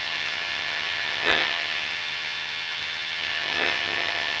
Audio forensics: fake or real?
fake